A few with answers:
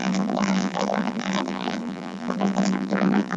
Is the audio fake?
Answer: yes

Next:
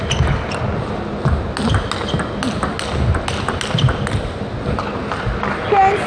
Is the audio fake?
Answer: no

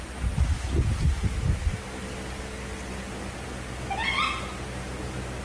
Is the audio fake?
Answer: no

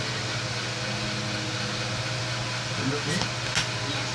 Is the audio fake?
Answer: no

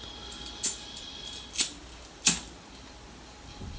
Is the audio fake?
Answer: no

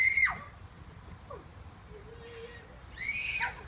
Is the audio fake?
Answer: no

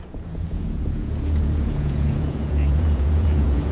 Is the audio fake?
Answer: yes